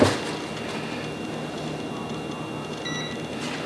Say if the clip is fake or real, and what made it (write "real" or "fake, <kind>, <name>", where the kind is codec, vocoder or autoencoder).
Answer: real